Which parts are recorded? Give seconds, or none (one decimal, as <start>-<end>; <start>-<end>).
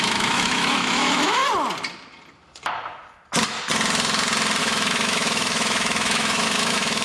1.4-4.6